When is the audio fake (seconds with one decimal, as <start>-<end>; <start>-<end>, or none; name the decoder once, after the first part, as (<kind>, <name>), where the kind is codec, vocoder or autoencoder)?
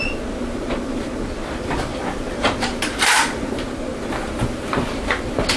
1.9-3.5 (vocoder, BigVGAN v2)